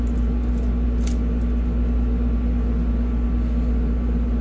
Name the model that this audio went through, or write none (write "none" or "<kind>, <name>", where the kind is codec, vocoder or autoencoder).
none